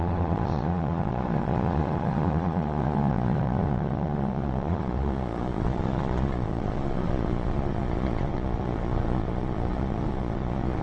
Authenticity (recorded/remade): remade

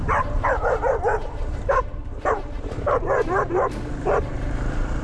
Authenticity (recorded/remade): remade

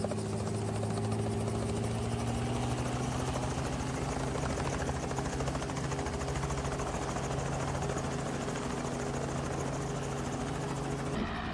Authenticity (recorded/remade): recorded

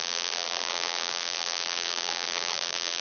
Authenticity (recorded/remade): remade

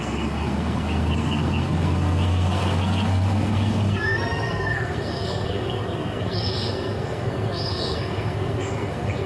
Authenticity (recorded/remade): remade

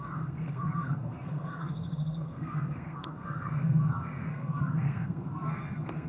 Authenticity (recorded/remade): remade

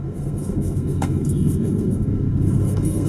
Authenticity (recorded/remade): remade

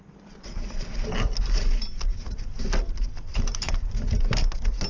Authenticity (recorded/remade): recorded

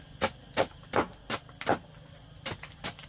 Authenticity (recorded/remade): recorded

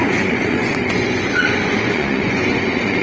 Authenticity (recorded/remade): remade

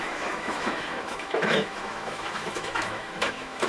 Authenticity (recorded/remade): remade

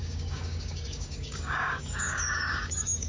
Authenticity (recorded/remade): remade